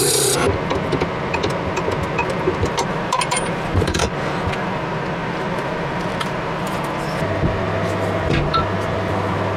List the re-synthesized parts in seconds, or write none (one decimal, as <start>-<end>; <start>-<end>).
2.2-4.1; 5.2-6.8